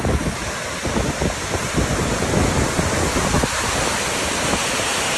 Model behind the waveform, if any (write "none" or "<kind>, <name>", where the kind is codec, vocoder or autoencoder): none